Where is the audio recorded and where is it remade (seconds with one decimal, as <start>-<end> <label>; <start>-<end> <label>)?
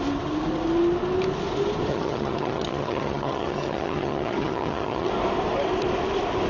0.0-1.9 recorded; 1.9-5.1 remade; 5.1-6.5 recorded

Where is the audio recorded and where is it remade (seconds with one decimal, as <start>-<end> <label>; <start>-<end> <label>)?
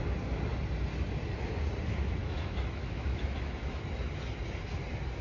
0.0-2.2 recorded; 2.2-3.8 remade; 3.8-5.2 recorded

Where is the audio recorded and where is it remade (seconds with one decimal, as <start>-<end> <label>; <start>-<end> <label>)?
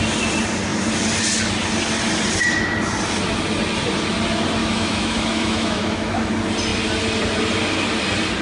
0.0-4.6 recorded; 4.6-6.3 remade; 6.3-8.4 recorded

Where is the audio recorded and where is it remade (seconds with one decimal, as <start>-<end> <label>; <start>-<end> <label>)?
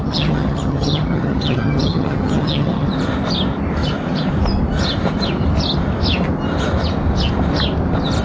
0.0-2.9 remade; 2.9-8.2 recorded